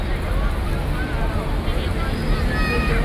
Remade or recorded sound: recorded